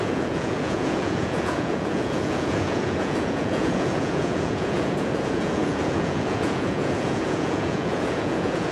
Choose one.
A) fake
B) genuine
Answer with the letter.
A